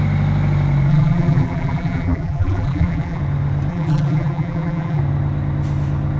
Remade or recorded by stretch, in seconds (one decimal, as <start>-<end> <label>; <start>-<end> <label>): 0.0-0.9 recorded; 0.9-3.2 remade; 3.2-3.7 recorded; 3.7-5.0 remade; 5.0-6.2 recorded